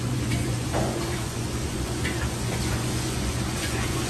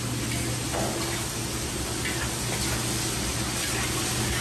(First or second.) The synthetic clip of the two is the first